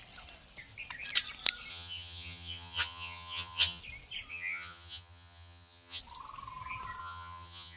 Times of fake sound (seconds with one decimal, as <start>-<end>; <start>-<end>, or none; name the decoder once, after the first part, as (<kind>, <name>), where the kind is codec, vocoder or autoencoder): 1.7-3.8 (vocoder, HiFi-GAN); 4.3-6.0; 7.0-7.8